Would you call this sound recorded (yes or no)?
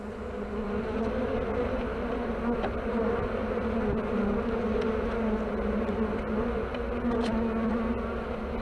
yes